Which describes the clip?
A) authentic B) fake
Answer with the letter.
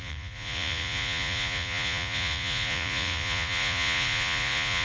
B